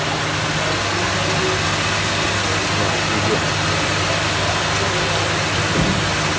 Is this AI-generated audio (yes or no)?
no